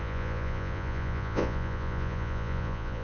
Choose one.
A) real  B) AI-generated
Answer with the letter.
B